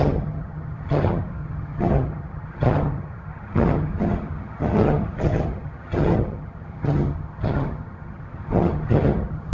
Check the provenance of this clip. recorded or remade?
remade